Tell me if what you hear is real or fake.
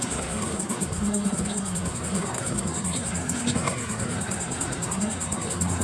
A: fake